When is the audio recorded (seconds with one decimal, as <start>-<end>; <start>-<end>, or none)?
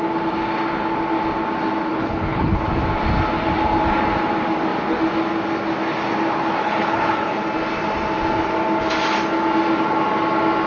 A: 0.0-1.9; 2.6-6.6; 7.3-10.7